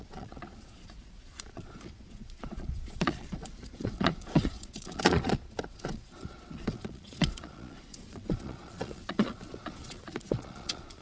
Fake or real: fake